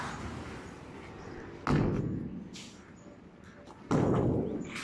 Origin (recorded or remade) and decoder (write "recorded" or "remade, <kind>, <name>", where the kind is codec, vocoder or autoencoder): recorded